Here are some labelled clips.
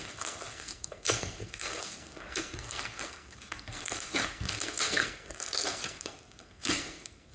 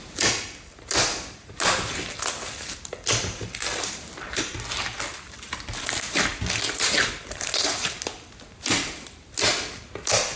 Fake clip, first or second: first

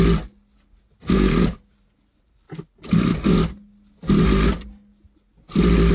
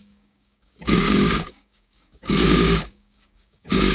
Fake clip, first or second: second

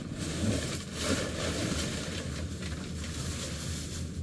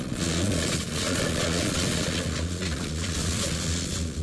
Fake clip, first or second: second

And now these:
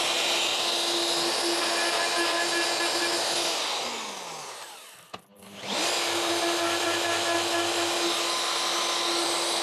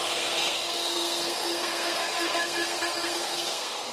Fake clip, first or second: second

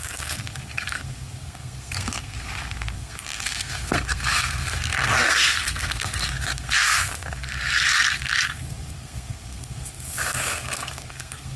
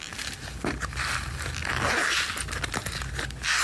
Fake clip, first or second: first